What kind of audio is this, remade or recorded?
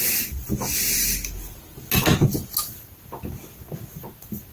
recorded